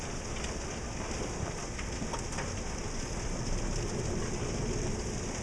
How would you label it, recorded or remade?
recorded